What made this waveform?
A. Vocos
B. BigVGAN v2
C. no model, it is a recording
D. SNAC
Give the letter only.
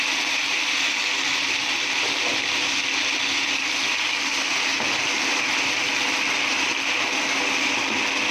C